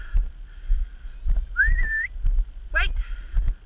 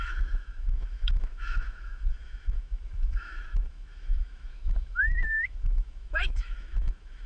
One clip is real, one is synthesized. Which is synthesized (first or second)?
second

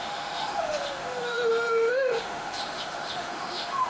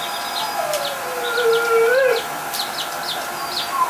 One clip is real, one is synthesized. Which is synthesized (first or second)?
first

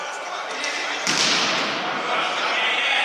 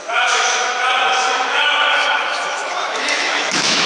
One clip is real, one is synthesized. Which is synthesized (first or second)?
second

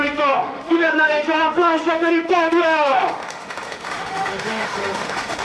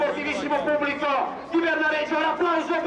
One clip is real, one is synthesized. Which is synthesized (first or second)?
first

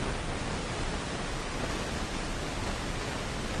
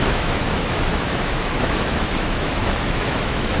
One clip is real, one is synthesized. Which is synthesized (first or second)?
second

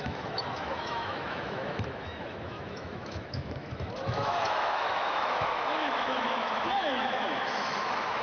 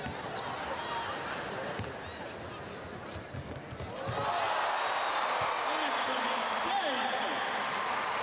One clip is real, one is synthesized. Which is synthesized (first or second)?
first